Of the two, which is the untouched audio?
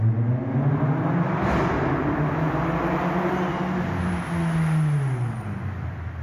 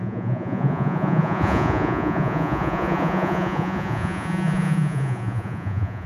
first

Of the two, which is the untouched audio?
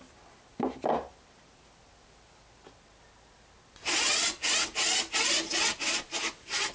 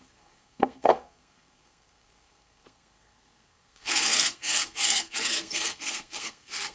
first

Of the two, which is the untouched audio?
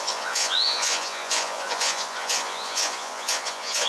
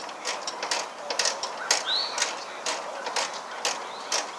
second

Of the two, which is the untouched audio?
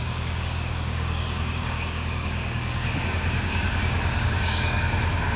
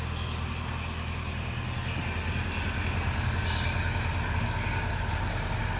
second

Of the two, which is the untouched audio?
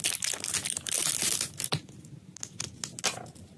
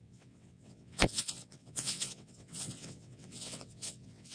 first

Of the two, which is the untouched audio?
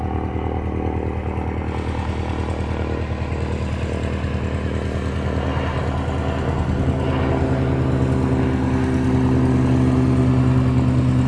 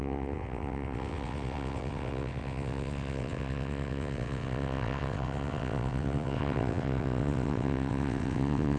first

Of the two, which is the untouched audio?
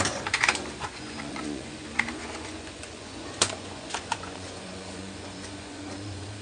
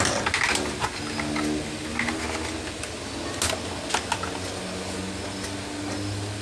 second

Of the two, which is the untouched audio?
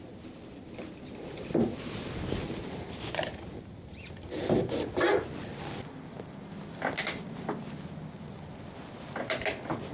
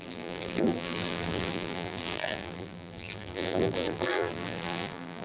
first